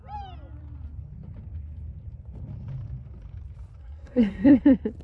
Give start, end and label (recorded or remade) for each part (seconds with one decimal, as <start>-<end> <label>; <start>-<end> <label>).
0.0-3.8 recorded; 3.8-4.6 remade; 4.6-5.0 recorded

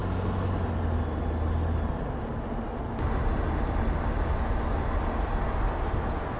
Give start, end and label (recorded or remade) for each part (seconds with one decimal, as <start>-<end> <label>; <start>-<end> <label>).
0.0-6.4 recorded

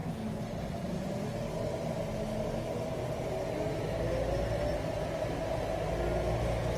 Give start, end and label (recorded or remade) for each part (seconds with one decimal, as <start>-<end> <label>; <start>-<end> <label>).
0.0-6.8 recorded

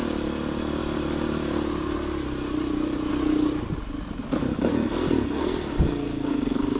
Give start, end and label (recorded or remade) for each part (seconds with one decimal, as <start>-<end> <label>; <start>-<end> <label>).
0.0-4.5 recorded; 4.5-6.8 remade

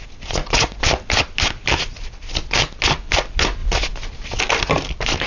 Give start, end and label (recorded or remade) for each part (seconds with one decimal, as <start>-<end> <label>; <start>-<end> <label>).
0.0-5.3 recorded

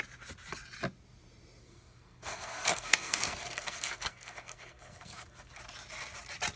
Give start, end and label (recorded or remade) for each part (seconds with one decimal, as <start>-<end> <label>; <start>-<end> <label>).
0.0-1.6 recorded; 1.6-5.6 remade; 5.6-6.6 recorded

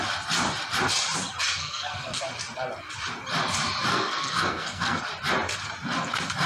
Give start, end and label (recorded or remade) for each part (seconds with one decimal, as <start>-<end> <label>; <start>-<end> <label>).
0.0-1.6 recorded; 1.6-2.2 remade; 2.2-3.9 recorded; 3.9-5.0 remade; 5.0-6.5 recorded